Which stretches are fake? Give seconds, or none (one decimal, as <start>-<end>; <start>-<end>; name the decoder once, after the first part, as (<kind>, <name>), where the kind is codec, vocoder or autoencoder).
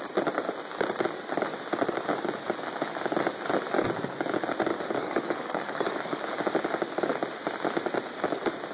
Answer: 4.7-6.4 (codec, DAC)